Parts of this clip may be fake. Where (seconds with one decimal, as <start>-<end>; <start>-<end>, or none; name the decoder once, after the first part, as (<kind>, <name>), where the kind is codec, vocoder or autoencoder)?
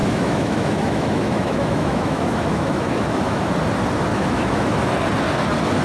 0.0-3.5 (autoencoder, DAC-VAE); 4.1-4.9